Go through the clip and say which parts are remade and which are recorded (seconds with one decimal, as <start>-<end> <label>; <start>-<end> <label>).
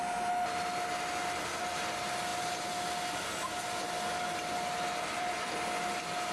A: 0.0-6.3 recorded